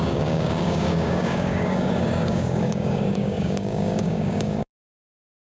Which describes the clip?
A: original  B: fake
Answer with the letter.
B